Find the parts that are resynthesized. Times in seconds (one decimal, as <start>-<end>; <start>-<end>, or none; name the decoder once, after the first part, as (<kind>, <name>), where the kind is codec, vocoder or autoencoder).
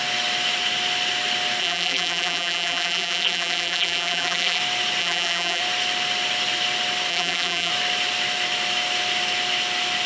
1.6-4.6 (vocoder, BigVGAN v2); 5.0-5.6; 7.1-7.7